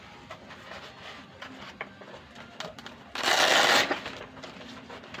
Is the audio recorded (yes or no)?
yes